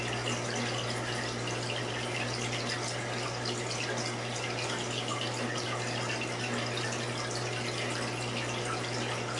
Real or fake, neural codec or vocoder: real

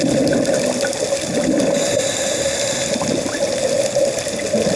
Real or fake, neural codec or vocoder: real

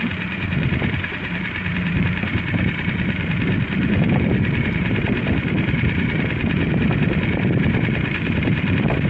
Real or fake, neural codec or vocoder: fake, vocoder, BigVGAN v2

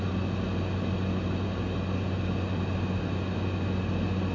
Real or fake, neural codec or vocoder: real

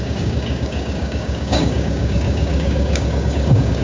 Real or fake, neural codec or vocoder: fake, codec, DAC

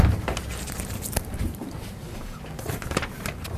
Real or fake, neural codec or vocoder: fake, vocoder, BigVGAN v2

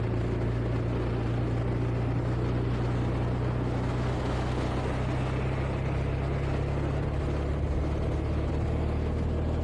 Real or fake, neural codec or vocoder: real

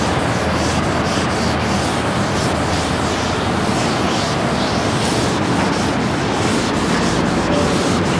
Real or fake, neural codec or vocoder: real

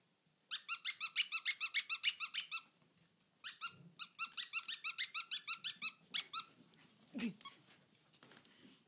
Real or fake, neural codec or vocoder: real